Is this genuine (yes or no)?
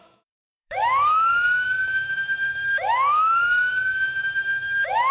no